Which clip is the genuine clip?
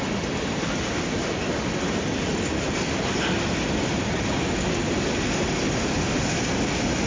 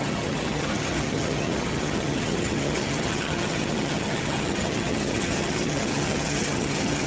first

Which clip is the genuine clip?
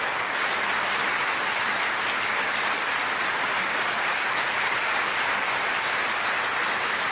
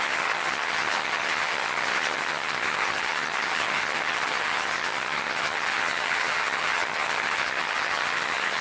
first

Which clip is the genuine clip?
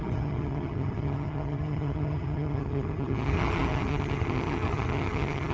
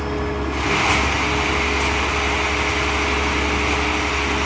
second